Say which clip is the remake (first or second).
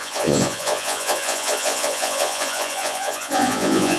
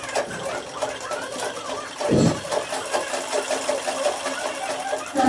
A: first